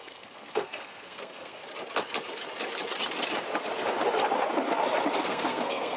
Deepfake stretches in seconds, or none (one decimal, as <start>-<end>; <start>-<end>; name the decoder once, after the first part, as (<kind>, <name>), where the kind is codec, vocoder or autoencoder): 0.0-1.6 (codec, SNAC); 5.2-6.0